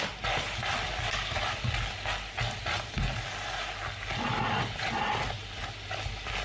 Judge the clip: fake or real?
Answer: real